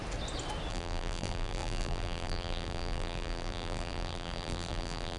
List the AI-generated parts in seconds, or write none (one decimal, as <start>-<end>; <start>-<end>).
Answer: 0.7-5.2